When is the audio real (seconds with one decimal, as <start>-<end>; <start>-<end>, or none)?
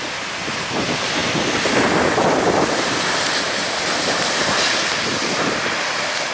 none